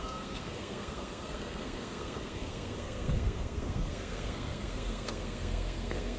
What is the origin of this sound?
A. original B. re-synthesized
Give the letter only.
B